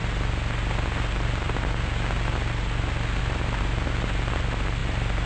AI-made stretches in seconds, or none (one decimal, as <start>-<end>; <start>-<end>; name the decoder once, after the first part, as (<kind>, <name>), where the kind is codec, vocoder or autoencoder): none